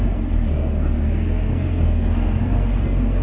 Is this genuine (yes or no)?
no